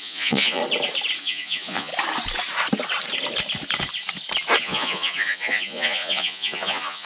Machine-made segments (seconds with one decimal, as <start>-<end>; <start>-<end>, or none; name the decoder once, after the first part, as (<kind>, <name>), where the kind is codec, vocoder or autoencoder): 0.0-0.6 (vocoder, Vocos); 1.2-1.9; 4.6-7.1